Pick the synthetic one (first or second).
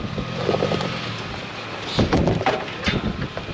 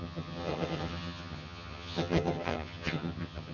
second